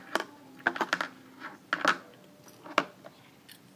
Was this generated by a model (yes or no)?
no